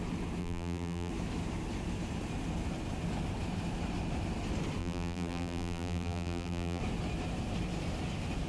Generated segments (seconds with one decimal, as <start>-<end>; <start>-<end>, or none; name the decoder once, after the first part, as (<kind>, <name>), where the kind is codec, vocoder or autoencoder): 0.4-1.1 (vocoder, BigVGAN v2); 4.8-6.8